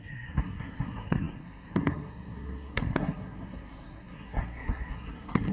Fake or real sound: fake